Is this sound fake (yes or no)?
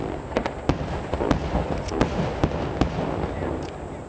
no